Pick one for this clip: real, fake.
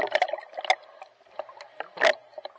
real